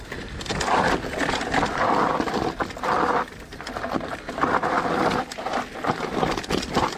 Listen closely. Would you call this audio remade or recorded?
recorded